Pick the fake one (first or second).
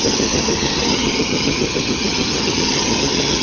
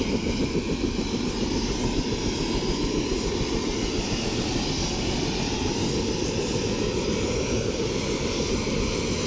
first